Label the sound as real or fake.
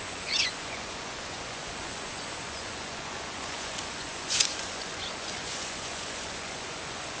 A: fake